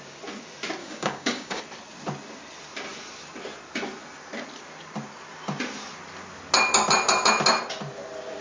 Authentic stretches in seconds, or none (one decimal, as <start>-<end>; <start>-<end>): 0.0-0.8; 1.6-8.4